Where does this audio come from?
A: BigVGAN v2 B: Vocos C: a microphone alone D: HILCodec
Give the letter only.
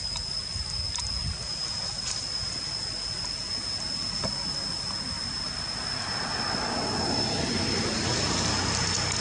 C